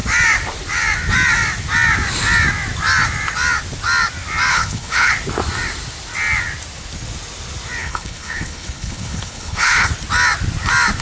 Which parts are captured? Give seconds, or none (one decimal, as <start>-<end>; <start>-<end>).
0.0-4.5; 5.1-7.8; 9.9-11.0

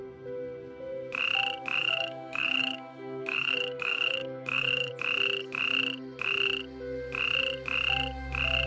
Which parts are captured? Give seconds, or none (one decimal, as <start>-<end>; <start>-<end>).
0.0-1.8; 4.9-8.7

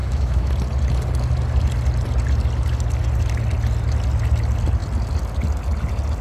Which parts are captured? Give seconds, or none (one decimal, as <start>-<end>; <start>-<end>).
0.5-6.2

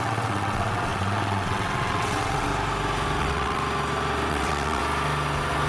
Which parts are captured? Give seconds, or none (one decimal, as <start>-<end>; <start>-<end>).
2.5-3.2; 3.6-4.3; 4.8-5.7